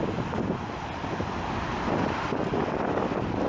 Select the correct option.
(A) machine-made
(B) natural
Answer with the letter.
B